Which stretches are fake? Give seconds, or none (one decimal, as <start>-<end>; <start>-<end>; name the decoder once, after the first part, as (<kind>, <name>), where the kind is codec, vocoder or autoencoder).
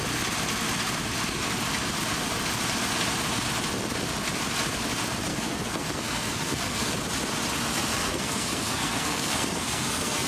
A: 5.3-6.9 (codec, SNAC); 7.9-10.3